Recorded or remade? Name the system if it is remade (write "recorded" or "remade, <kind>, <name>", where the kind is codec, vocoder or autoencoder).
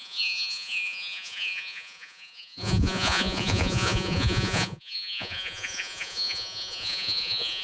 remade, vocoder, Vocos